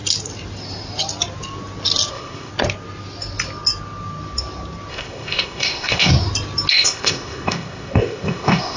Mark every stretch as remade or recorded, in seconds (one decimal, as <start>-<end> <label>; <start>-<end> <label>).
0.0-2.1 recorded; 2.1-2.5 remade; 2.5-4.9 recorded; 4.9-6.1 remade; 6.1-6.7 recorded; 6.7-8.8 remade